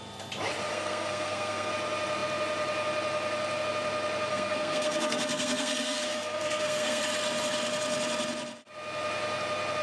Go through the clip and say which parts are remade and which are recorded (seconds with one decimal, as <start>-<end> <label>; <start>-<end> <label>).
0.0-0.7 recorded; 0.7-1.7 remade; 1.7-4.3 recorded; 4.3-7.0 remade; 7.0-9.8 recorded